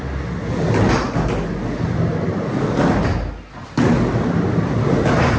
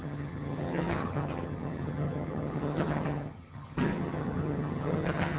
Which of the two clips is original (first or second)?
first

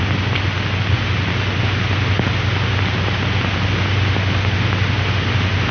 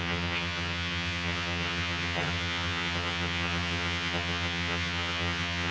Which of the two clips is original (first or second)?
first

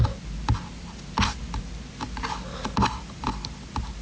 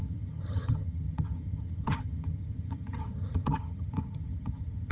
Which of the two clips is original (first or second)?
first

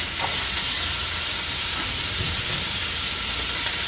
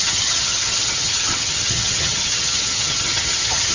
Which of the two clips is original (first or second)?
first